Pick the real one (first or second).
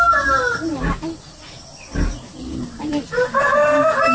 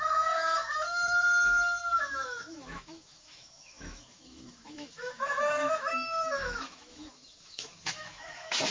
first